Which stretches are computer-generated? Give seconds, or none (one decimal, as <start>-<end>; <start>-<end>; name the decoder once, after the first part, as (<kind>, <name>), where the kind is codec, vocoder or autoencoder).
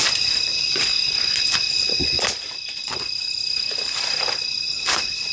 0.0-0.5 (vocoder, BigVGAN v2); 1.4-5.3